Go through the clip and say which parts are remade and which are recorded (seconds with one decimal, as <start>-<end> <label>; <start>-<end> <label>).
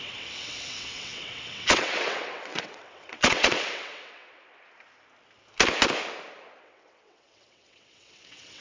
0.0-4.5 remade; 4.5-6.6 recorded; 6.6-8.6 remade